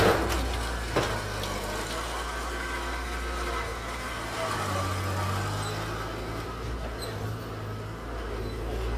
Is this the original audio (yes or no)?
yes